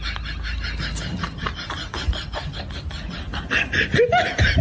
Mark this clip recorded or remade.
recorded